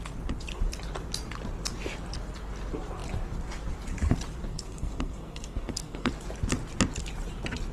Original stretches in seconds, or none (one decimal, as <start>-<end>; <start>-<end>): 0.0-4.5; 6.1-7.7